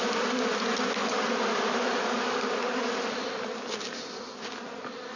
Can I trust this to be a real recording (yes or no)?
yes